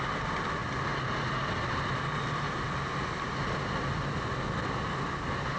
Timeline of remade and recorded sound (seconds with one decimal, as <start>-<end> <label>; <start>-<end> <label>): 0.0-5.6 recorded